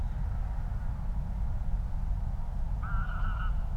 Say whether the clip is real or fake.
real